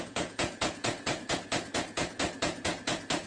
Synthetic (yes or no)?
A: yes